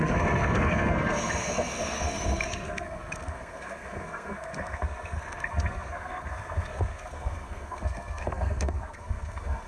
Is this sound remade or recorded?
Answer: remade